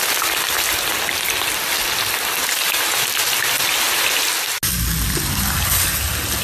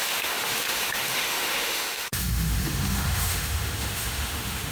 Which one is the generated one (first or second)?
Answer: second